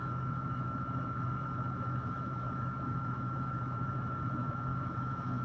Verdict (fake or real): fake